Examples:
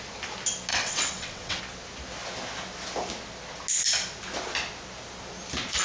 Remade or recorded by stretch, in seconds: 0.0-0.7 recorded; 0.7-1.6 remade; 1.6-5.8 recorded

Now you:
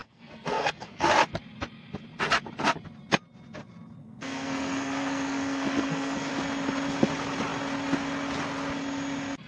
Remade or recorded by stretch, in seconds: 0.0-1.1 remade; 1.1-4.0 recorded; 4.0-6.3 remade; 6.3-9.5 recorded

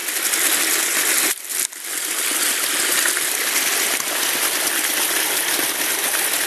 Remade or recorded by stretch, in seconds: 0.0-6.5 recorded

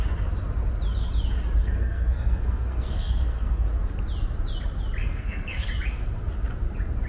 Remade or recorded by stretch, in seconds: 0.0-1.6 recorded; 1.6-3.7 remade; 3.7-5.0 recorded; 5.0-5.7 remade; 5.7-7.1 recorded